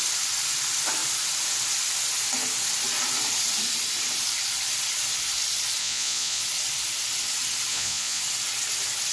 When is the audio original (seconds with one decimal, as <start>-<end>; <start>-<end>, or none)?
0.0-5.8; 6.4-7.7; 8.2-9.1